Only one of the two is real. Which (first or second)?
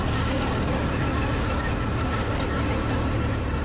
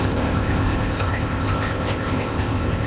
first